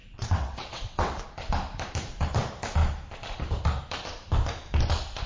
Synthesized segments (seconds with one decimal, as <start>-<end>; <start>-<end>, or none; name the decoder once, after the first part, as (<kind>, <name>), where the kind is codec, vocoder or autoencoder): 0.0-1.3 (vocoder, WaveNeXt)